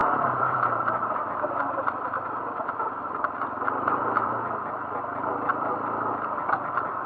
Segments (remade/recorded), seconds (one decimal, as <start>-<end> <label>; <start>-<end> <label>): 0.0-7.1 remade